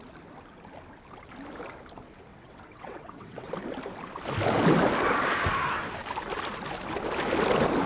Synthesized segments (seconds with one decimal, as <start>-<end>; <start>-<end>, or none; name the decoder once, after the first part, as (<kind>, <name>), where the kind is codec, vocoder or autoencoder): 2.3-3.5 (vocoder, WaveNeXt)

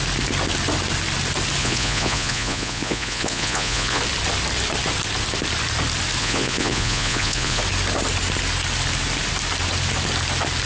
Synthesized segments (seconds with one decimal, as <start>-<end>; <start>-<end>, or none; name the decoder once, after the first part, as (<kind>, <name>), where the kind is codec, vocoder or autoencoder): 1.6-4.0 (vocoder, Vocos); 6.2-7.6

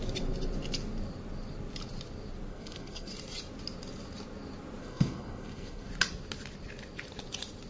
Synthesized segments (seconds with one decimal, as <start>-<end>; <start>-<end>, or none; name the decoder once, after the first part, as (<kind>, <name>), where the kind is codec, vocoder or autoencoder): 2.5-3.1 (codec, SNAC); 4.8-5.9

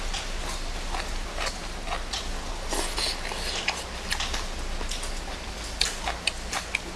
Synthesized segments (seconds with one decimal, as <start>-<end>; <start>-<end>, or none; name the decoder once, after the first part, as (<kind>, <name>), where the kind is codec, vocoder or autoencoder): none

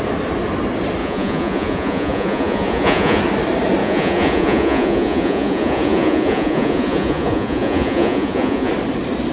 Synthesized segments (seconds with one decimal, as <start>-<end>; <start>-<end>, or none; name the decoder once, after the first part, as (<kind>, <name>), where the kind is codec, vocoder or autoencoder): 1.0-3.2 (vocoder, Vocos); 3.8-8.7

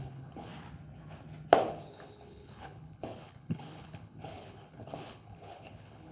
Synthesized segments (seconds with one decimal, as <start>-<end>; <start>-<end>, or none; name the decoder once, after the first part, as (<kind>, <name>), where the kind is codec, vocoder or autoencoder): 0.0-0.5 (codec, HILCodec); 1.7-6.1

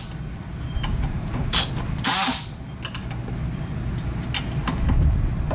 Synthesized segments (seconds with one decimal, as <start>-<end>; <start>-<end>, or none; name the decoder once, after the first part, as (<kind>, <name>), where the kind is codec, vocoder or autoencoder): 0.9-1.7 (vocoder, BigVGAN v2)

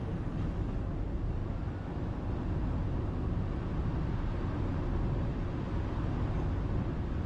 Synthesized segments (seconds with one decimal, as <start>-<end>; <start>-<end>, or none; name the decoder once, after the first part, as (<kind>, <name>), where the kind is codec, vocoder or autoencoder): none